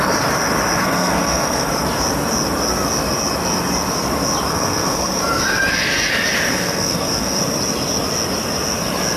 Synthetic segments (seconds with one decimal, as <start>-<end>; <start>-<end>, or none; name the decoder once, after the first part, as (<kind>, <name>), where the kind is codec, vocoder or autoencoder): 0.8-1.7 (codec, SNAC); 4.5-5.2; 6.5-7.4